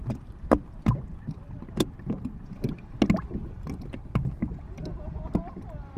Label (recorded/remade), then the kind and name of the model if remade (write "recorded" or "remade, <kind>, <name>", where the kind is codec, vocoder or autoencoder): recorded